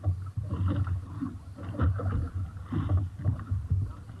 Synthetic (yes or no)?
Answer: no